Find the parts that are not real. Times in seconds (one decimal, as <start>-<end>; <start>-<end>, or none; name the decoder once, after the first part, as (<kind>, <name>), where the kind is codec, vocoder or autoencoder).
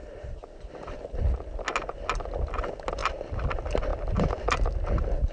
0.0-1.1 (vocoder, BigVGAN v2)